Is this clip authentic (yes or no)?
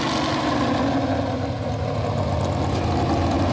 yes